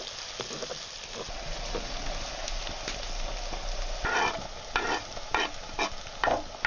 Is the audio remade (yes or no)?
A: no